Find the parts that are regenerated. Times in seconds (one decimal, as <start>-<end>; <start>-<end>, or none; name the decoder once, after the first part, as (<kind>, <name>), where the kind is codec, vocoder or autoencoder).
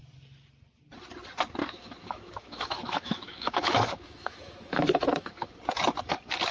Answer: 1.6-5.5 (autoencoder, DAC-VAE)